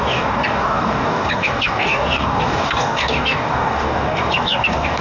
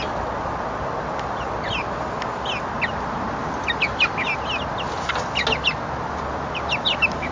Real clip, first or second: second